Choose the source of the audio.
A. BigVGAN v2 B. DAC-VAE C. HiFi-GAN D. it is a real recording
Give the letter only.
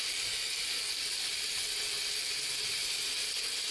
D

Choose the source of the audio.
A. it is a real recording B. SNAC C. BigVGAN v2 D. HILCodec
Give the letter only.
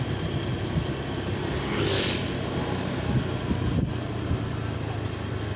A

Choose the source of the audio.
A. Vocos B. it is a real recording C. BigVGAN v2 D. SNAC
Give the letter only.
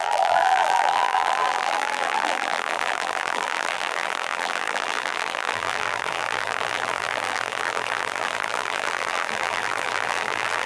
C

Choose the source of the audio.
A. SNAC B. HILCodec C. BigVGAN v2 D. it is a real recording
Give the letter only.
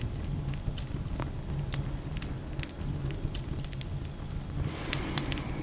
D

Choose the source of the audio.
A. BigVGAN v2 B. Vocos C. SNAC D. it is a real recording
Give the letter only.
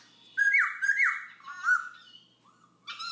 D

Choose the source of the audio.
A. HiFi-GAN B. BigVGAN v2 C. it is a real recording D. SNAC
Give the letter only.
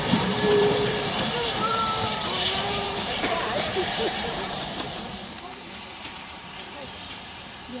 B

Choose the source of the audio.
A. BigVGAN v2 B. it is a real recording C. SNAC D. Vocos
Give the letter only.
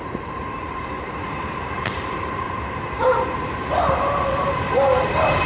A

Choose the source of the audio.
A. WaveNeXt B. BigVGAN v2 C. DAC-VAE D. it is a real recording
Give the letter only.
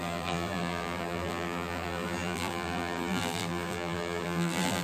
B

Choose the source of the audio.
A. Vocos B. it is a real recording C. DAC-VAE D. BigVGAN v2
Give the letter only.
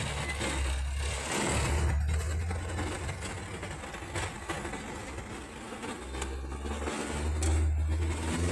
B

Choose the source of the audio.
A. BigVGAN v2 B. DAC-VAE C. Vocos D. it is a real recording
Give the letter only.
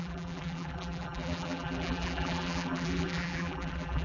A